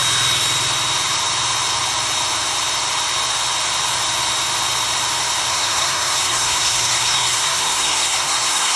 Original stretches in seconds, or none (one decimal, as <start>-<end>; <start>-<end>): 0.0-5.5